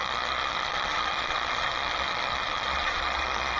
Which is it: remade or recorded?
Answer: remade